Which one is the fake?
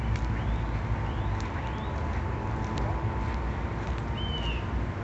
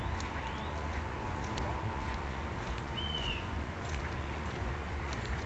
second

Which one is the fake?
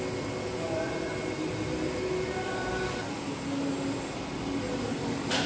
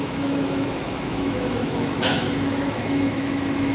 second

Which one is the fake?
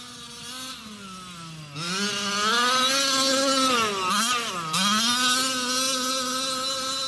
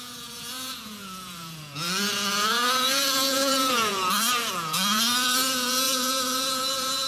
second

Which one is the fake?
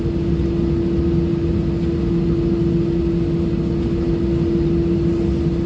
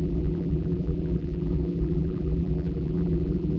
second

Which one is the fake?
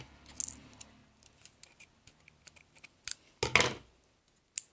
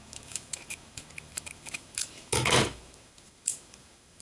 second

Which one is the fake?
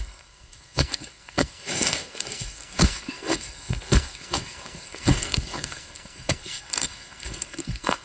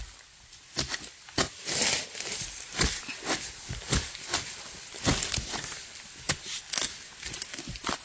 first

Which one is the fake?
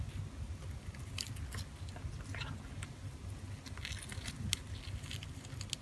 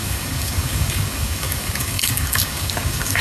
second